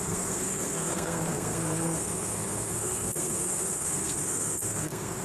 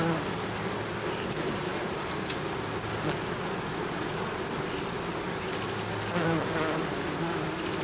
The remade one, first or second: first